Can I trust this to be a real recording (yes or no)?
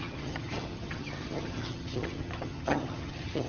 no